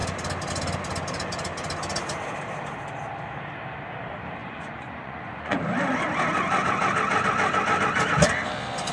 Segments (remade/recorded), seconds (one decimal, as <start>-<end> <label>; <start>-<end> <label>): 0.0-4.4 recorded; 4.4-5.6 remade; 5.6-8.9 recorded